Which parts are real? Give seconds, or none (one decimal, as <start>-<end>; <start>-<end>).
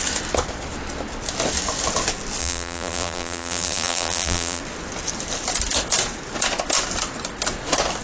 0.0-2.4; 4.6-8.0